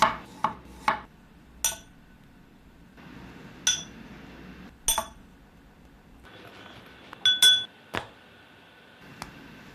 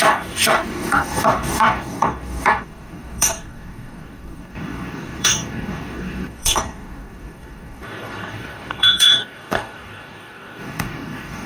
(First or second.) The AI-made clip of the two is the second